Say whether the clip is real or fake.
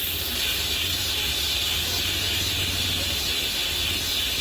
real